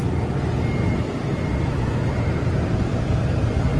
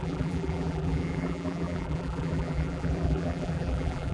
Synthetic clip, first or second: second